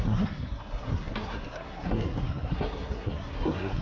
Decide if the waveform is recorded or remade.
remade